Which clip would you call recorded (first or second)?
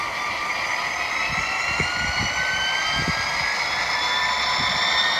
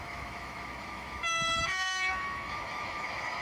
first